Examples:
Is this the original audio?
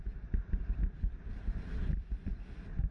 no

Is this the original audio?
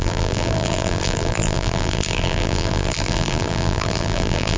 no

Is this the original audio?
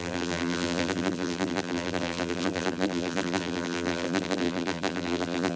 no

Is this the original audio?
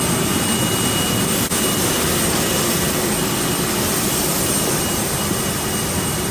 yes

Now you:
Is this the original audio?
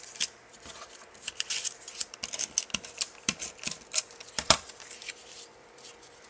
no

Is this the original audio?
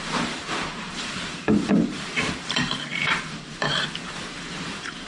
no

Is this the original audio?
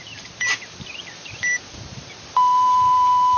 no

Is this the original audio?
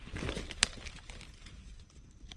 no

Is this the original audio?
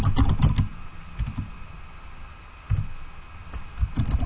yes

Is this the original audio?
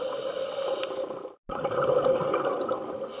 yes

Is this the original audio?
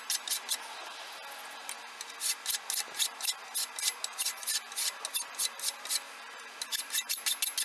yes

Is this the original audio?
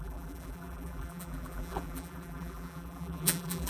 no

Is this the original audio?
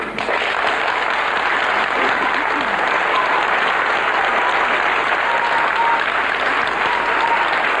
yes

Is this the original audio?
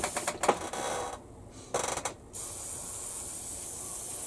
yes